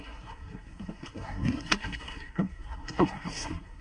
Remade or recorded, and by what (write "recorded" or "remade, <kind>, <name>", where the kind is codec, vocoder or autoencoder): remade, codec, SNAC